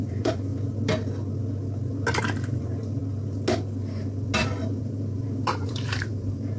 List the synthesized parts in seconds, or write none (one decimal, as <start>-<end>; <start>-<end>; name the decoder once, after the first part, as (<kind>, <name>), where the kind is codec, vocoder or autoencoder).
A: 0.0-0.5 (vocoder, BigVGAN v2); 2.2-3.0; 4.6-6.6